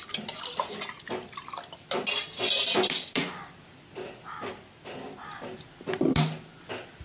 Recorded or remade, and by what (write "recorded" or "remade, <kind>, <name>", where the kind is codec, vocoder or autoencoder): recorded